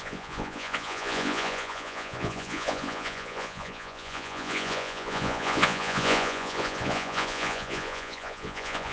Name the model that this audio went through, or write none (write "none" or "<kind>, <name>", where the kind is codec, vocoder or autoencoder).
vocoder, Vocos